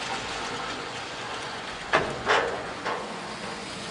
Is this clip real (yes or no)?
no